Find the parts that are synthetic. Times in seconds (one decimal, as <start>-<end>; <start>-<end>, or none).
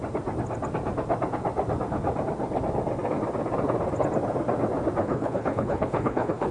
5.0-6.5